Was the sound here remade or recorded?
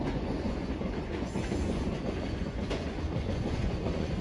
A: remade